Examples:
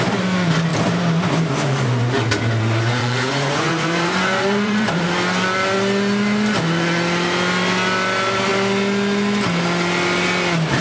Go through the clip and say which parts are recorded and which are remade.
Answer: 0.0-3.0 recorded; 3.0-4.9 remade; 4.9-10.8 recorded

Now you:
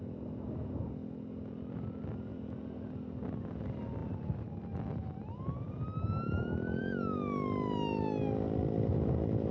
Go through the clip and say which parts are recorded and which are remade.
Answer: 0.0-9.5 recorded

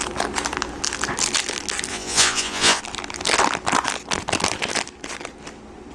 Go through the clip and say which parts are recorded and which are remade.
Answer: 0.0-1.9 recorded; 1.9-2.8 remade; 2.8-5.9 recorded

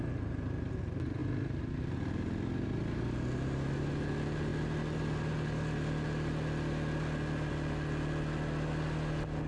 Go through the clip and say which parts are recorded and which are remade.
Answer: 0.0-9.5 recorded

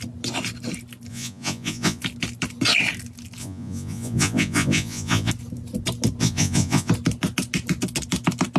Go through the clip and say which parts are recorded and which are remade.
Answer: 0.0-1.1 recorded; 1.1-2.0 remade; 2.0-3.4 recorded; 3.4-5.3 remade; 5.3-6.2 recorded; 6.2-6.9 remade; 6.9-8.6 recorded